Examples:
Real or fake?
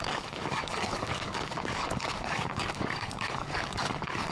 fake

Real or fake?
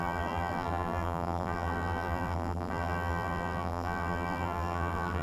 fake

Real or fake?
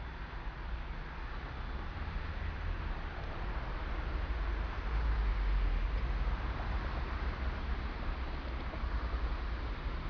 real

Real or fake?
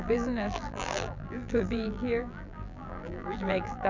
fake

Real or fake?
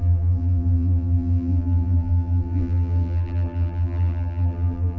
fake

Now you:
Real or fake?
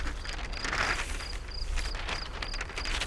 real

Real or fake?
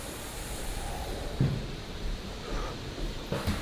fake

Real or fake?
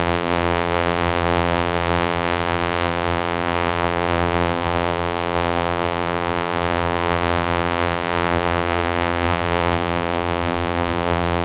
fake